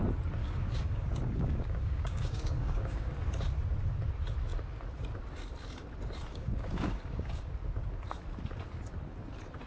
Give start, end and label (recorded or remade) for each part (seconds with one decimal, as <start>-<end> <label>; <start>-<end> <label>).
0.0-0.4 recorded; 0.4-3.1 remade; 3.1-6.3 recorded; 6.3-7.5 remade; 7.5-9.7 recorded